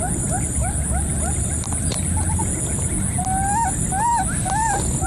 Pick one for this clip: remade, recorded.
recorded